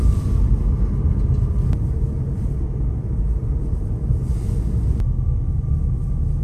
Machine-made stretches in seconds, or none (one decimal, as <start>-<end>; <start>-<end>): 0.0-0.6